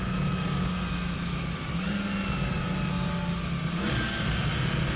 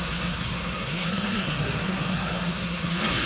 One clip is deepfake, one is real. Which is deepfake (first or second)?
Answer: second